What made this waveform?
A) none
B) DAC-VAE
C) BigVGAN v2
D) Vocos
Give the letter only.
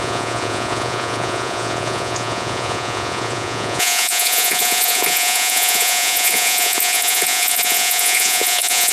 D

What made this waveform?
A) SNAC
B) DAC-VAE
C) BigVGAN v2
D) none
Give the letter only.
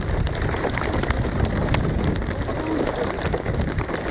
D